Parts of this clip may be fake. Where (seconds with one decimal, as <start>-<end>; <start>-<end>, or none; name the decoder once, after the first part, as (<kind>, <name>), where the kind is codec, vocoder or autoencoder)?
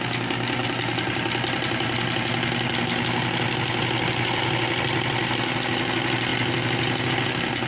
0.6-3.8 (vocoder, BigVGAN v2); 6.3-7.1